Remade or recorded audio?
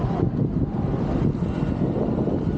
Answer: recorded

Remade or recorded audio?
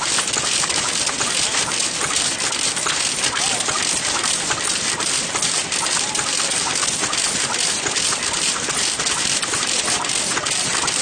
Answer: recorded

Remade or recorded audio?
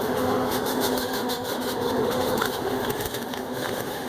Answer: remade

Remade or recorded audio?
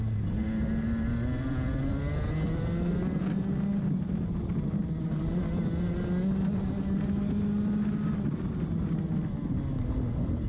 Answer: recorded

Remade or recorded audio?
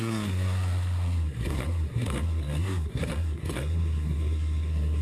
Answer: remade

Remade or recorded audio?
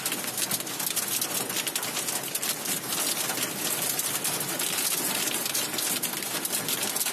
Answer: recorded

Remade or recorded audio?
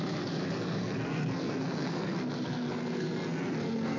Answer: remade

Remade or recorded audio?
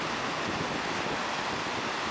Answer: recorded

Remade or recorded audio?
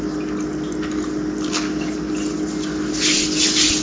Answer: recorded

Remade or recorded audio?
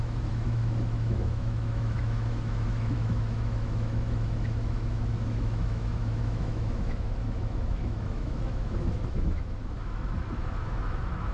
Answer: remade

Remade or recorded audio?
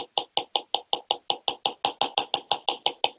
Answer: recorded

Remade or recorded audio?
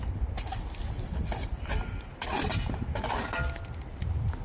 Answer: recorded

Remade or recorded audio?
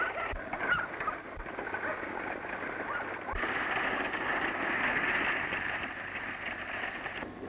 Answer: recorded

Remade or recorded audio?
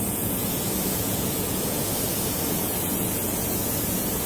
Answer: remade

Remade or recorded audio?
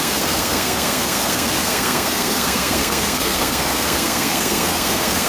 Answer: remade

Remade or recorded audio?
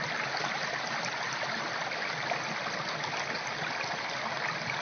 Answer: recorded